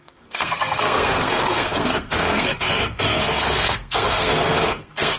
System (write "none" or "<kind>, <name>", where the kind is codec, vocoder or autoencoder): codec, SNAC